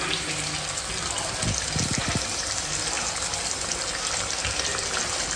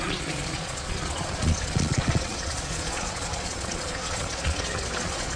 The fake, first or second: second